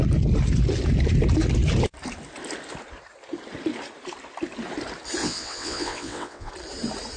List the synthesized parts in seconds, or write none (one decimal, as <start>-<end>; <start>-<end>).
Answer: 5.2-6.5